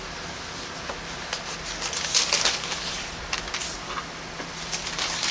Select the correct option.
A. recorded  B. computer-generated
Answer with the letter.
A